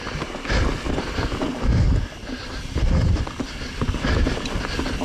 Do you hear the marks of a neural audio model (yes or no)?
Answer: yes